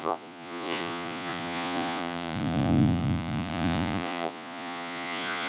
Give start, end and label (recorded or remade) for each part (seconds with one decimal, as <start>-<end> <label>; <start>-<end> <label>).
0.0-5.5 remade